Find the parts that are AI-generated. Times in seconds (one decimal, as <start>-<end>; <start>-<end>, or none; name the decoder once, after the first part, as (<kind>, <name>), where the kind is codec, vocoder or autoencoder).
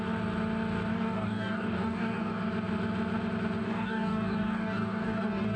0.9-2.5 (codec, DAC); 3.6-5.6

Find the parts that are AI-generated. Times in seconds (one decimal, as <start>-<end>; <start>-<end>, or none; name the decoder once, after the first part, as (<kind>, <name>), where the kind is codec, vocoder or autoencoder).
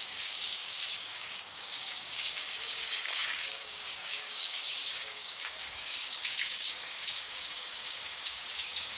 0.0-9.0 (codec, DAC)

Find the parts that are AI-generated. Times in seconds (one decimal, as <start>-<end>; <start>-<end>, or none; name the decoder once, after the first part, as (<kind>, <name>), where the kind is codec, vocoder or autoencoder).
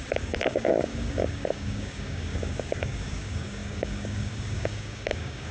0.0-5.5 (codec, DAC)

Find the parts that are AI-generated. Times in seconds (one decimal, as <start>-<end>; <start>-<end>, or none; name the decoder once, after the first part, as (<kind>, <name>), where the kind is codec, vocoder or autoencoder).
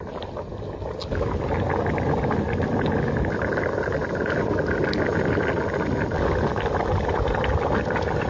none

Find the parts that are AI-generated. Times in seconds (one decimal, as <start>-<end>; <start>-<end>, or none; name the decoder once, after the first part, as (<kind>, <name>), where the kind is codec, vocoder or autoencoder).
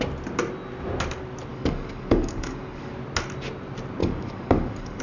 1.5-2.9 (codec, DAC); 4.0-5.0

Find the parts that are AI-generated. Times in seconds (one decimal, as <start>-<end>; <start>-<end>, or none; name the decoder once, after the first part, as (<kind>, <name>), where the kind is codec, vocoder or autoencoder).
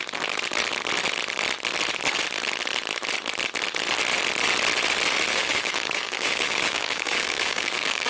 5.3-8.1 (codec, DAC)